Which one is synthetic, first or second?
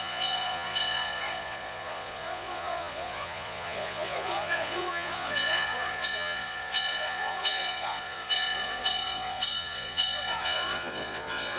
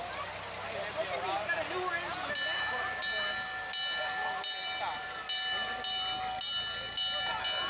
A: first